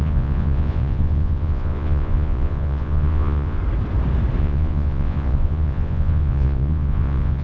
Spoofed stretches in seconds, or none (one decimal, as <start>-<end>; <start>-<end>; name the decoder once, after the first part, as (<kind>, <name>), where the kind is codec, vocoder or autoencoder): 0.0-3.6 (vocoder, Vocos); 4.4-7.4